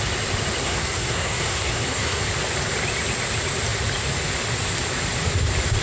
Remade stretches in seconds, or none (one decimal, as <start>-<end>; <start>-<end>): 0.6-2.2